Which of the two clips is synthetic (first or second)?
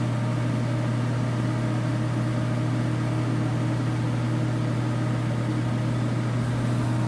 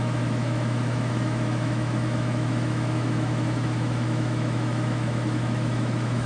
second